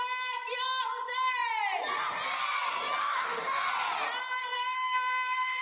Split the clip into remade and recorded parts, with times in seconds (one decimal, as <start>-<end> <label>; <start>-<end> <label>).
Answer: 0.0-3.0 recorded; 3.0-3.7 remade; 3.7-4.7 recorded; 4.7-5.6 remade